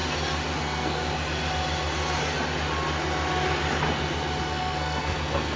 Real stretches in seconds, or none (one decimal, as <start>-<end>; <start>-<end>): 0.0-0.6; 1.0-4.4